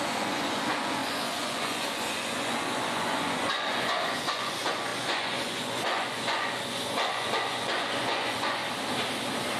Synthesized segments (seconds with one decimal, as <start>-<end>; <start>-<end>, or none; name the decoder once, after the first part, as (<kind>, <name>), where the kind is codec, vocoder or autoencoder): 0.0-8.6 (vocoder, Vocos)